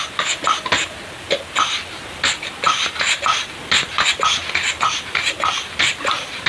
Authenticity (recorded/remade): recorded